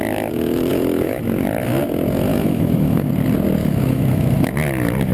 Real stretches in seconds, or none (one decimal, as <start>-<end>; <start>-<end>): 0.0-0.7; 1.2-2.3; 3.1-3.6; 4.5-5.1